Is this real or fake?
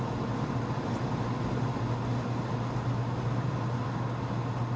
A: real